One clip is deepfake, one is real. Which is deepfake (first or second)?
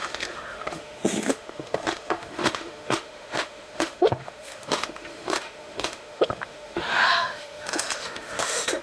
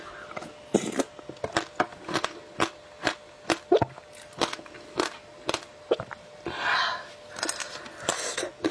first